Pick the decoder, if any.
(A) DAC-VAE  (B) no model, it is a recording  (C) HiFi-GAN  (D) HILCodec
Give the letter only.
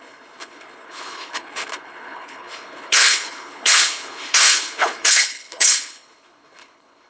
D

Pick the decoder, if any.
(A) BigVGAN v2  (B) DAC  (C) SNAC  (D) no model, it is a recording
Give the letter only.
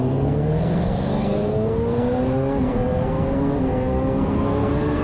C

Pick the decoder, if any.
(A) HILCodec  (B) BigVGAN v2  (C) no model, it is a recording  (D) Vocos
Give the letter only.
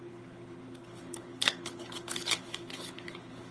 A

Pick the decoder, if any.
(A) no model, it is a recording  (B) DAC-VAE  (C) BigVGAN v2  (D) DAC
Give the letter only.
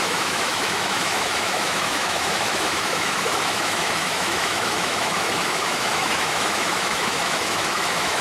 B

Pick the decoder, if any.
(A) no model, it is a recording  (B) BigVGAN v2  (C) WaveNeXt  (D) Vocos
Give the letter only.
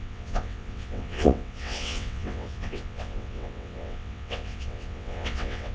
C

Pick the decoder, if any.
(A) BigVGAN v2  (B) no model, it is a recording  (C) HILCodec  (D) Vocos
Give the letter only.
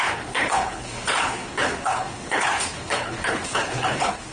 C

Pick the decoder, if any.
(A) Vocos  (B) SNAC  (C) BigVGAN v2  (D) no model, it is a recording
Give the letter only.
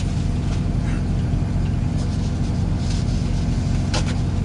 D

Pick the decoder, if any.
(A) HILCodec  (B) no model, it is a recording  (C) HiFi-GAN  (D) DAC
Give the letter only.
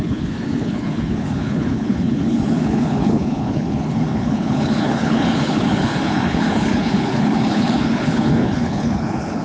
A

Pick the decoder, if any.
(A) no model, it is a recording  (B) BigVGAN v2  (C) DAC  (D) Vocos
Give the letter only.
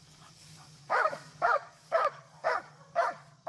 C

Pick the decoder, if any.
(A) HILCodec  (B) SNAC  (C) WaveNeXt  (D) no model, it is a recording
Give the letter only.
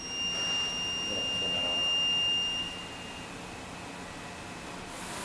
D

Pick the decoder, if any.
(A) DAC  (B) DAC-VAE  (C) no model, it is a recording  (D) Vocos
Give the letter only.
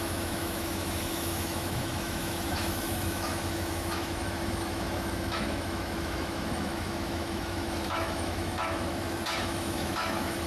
B